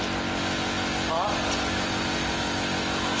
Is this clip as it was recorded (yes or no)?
yes